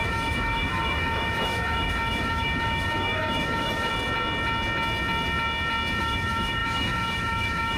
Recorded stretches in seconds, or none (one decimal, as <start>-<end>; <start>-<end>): 3.9-6.0